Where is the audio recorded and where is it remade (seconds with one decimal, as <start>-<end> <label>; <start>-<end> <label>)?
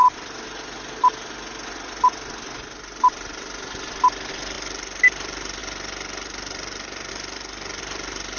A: 0.0-8.4 recorded